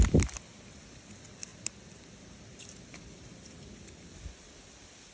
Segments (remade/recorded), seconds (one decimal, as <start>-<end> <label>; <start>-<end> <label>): 0.0-5.1 recorded